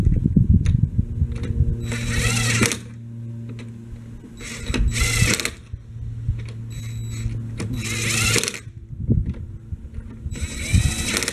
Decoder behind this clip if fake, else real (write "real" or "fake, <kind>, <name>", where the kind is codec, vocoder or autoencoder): real